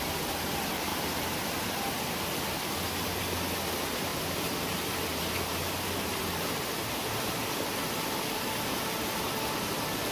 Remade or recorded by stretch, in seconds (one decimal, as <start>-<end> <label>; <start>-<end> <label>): 0.0-0.9 recorded; 0.9-3.2 remade; 3.2-4.1 recorded; 4.1-8.2 remade; 8.2-10.1 recorded